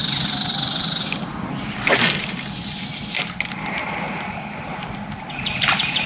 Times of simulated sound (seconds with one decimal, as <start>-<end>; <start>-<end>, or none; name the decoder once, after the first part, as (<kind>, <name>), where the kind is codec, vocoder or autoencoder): 3.8-4.6 (vocoder, BigVGAN v2)

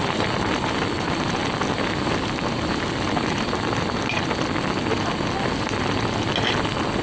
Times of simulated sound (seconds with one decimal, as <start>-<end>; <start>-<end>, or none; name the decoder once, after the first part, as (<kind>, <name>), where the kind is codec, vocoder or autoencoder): none

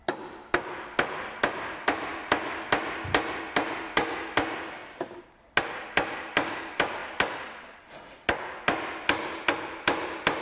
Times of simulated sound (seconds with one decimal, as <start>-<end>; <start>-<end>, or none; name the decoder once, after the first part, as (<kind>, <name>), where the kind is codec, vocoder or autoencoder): none

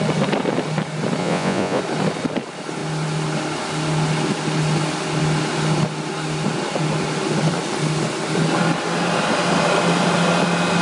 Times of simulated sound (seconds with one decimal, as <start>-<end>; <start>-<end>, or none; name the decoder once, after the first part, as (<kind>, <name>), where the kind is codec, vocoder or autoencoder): 1.2-1.8 (vocoder, Vocos)